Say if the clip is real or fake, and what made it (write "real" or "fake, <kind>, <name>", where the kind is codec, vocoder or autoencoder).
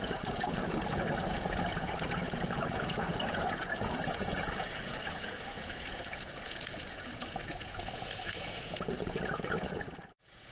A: fake, vocoder, Vocos